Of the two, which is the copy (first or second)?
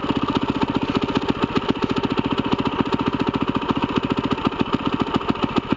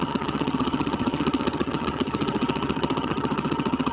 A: second